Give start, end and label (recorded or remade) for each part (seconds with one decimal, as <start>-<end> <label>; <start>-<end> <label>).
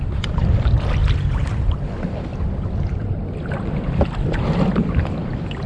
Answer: 0.0-1.0 remade; 1.0-1.7 recorded; 1.7-2.3 remade; 2.3-3.3 recorded; 3.3-5.7 remade